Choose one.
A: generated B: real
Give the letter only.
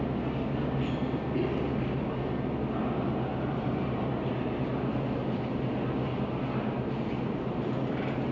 B